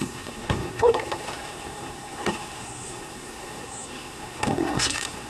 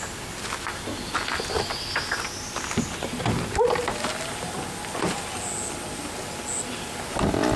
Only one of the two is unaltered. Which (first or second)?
second